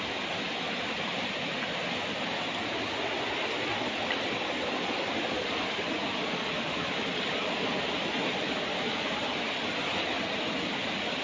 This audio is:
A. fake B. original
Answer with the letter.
B